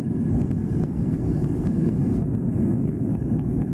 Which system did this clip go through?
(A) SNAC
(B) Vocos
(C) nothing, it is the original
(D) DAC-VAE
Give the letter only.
A